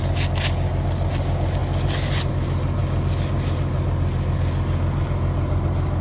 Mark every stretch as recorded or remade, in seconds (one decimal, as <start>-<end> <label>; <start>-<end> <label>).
0.0-6.0 recorded